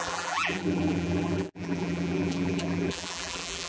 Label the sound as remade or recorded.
remade